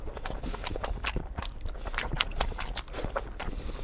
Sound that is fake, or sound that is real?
fake